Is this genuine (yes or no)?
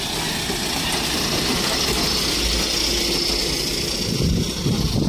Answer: yes